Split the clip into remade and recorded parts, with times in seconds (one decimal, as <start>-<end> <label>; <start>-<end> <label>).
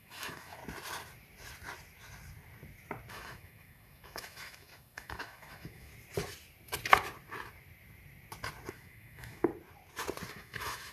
0.0-0.6 remade; 0.6-3.1 recorded; 3.1-5.9 remade; 5.9-8.7 recorded; 8.7-9.5 remade; 9.5-10.3 recorded; 10.3-10.9 remade